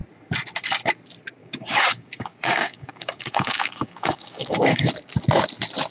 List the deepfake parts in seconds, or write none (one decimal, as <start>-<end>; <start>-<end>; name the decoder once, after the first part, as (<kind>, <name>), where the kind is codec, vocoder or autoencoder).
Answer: 1.4-4.9 (codec, DAC)